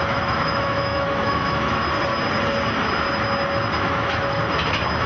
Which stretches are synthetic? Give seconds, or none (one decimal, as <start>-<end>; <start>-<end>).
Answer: 0.0-1.8; 3.8-4.4